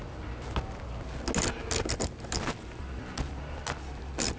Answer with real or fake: real